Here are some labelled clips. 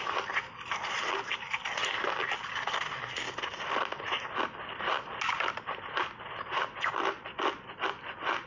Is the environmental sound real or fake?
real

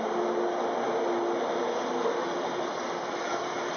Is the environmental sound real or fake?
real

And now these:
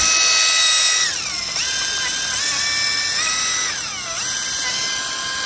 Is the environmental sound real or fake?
real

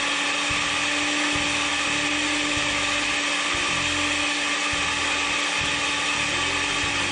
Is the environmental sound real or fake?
real